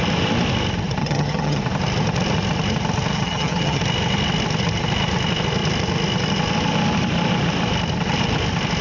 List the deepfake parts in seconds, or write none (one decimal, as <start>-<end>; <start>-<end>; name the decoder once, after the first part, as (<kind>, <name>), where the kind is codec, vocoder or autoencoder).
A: 1.0-1.6 (vocoder, HiFi-GAN); 3.1-3.8